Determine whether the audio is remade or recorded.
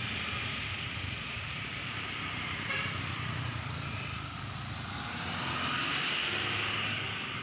remade